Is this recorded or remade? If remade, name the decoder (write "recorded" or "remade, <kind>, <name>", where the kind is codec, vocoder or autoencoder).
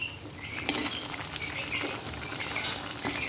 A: recorded